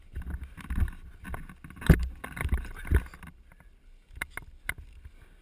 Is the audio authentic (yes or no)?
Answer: yes